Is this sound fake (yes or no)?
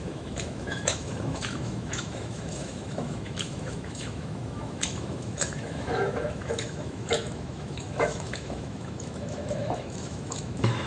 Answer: yes